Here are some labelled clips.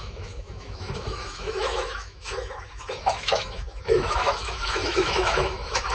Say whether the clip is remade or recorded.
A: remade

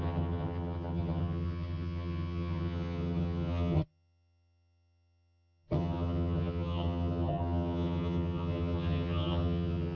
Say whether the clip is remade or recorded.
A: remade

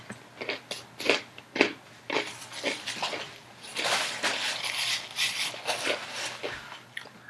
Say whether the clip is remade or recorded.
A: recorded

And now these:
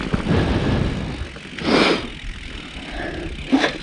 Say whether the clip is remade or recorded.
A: recorded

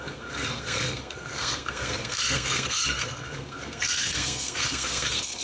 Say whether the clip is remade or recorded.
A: remade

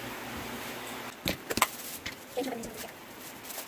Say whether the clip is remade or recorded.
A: recorded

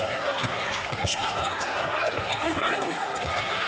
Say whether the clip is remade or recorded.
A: remade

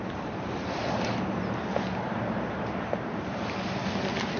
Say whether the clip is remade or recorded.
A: recorded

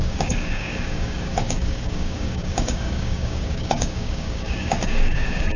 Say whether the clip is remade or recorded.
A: remade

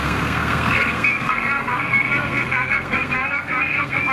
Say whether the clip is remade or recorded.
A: remade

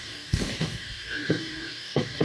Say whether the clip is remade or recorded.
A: remade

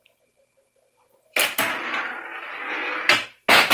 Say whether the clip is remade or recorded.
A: recorded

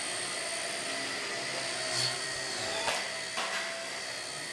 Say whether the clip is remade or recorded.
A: recorded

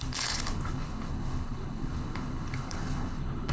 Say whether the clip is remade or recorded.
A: remade